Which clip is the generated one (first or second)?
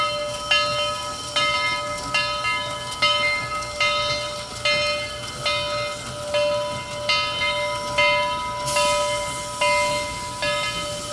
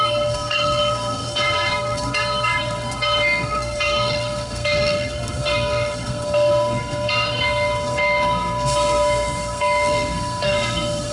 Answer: second